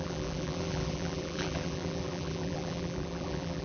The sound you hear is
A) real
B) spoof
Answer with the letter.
B